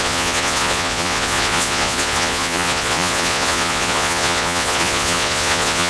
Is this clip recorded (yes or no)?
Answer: no